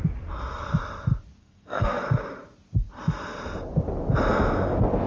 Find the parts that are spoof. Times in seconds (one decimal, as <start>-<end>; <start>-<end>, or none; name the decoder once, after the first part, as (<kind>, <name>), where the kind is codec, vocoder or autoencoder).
1.4-2.0 (codec, SNAC)